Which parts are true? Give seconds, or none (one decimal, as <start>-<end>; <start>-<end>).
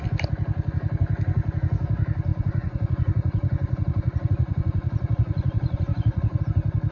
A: 0.0-2.3; 6.4-6.9